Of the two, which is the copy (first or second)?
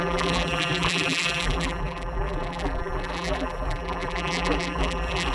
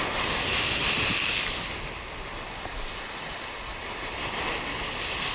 first